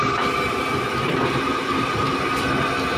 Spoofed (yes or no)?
no